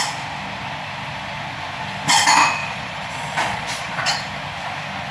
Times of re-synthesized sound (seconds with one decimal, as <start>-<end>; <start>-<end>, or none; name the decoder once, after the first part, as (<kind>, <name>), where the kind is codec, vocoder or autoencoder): 2.6-4.0 (vocoder, Vocos)